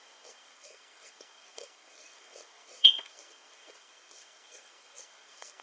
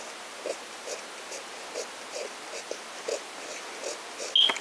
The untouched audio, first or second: second